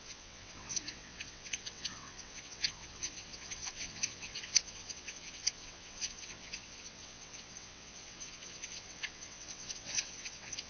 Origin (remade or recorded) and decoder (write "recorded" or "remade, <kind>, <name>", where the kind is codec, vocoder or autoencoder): remade, vocoder, WaveNeXt